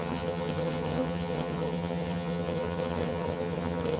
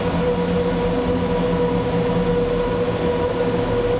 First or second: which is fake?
first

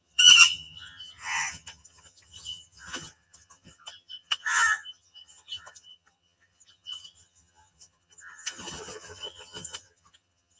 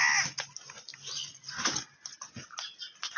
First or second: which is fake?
first